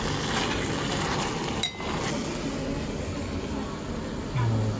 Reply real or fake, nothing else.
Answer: real